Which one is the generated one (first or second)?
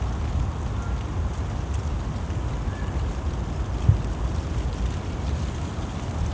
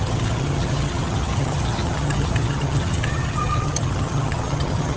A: second